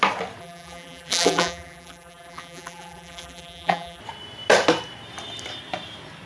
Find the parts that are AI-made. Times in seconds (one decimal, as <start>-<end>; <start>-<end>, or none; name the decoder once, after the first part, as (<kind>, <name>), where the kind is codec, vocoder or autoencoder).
0.4-4.0 (vocoder, BigVGAN v2)